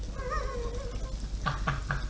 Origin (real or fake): real